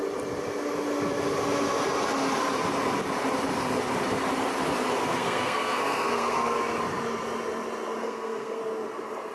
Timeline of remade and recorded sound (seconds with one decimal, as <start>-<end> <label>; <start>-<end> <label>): 0.0-5.0 recorded; 5.0-6.6 remade; 6.6-8.0 recorded; 8.0-8.6 remade; 8.6-9.3 recorded